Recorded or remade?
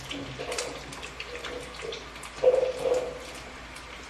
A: remade